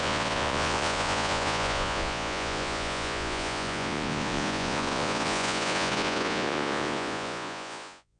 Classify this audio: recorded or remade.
remade